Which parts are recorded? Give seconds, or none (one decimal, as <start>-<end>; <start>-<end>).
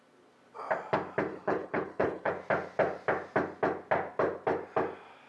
0.0-1.3; 2.3-5.3